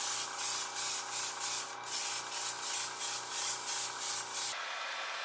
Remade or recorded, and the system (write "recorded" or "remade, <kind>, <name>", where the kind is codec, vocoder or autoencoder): recorded